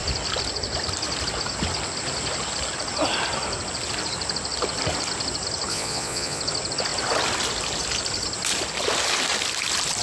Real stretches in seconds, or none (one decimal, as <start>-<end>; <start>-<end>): 0.0-5.7; 6.4-10.0